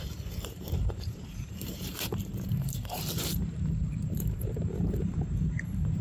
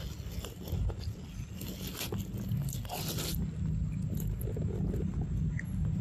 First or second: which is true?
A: second